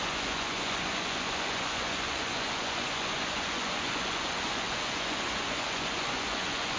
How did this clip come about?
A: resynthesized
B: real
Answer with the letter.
A